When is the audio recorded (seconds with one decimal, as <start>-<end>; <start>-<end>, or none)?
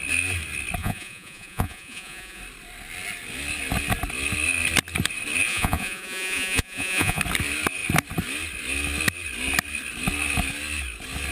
0.0-0.8; 2.4-5.5; 7.2-11.3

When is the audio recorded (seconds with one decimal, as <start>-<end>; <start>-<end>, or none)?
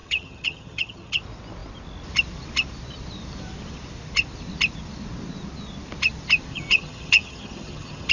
1.2-6.5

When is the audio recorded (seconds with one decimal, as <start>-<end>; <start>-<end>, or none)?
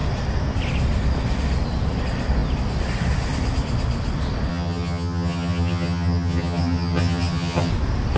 0.0-4.5; 7.7-8.2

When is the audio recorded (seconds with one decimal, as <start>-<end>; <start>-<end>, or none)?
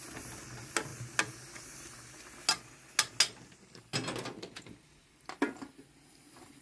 0.0-6.6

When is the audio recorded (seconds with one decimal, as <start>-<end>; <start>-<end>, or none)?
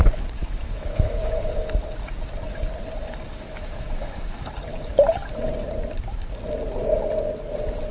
0.0-0.4; 1.8-3.3; 4.5-7.9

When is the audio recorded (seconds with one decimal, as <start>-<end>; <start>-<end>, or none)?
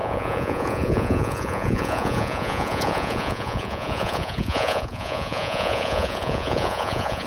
none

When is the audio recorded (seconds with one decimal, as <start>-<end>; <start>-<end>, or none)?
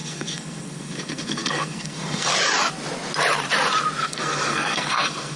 2.3-4.0